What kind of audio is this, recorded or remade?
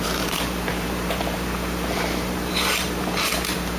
remade